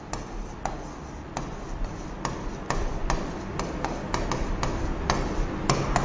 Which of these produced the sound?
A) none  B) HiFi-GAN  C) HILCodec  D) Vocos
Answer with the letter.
A